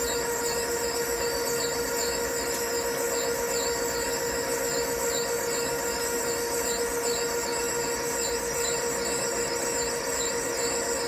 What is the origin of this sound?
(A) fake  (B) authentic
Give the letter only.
B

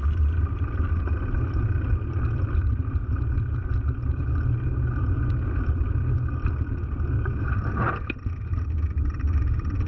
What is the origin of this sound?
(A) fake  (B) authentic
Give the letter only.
B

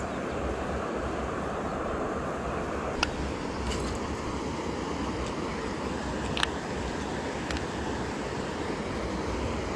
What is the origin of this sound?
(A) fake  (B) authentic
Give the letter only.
B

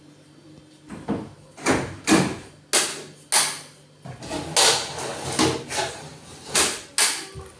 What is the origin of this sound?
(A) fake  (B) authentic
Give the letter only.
B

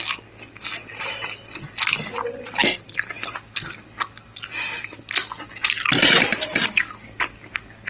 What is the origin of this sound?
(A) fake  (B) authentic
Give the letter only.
B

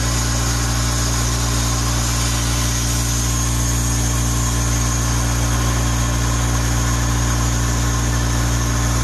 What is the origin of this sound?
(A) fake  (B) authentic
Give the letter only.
B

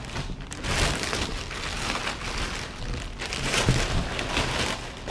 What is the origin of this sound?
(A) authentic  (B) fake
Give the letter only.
A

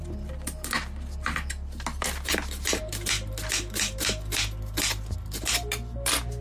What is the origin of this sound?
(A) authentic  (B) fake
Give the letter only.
A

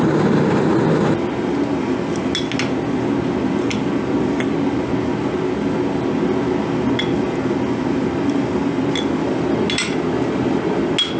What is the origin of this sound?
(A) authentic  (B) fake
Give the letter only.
A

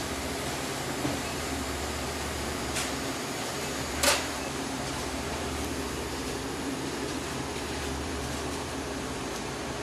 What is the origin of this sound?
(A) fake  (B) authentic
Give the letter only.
A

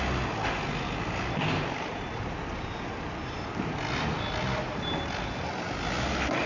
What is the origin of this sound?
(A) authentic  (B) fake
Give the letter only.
A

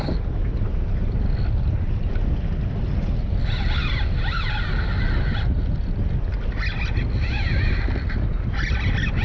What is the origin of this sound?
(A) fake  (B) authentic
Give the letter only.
B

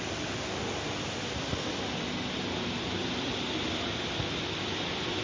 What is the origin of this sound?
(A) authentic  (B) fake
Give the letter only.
A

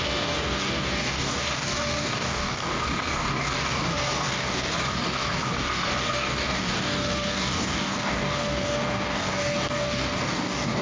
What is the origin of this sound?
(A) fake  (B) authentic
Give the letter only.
A